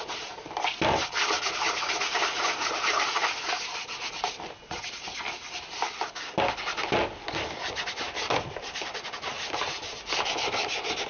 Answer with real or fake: real